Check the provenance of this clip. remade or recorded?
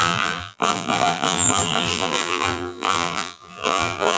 remade